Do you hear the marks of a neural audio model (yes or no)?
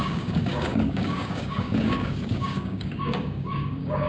yes